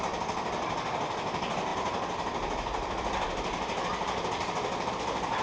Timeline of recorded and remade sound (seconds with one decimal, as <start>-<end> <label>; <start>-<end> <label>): 0.0-5.4 recorded